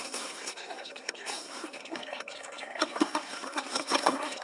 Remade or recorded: remade